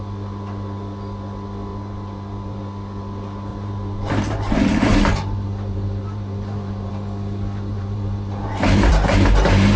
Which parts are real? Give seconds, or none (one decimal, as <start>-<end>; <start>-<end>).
0.0-1.7; 2.6-3.5; 6.9-7.7; 8.9-9.8